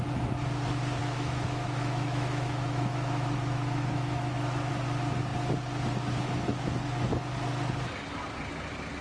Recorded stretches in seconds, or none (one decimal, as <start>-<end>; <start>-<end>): 0.0-1.0; 4.7-9.0